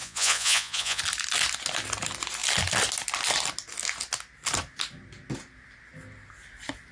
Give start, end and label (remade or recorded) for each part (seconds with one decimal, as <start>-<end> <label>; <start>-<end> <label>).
0.0-1.0 remade; 1.0-6.9 recorded